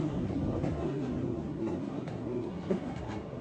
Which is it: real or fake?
fake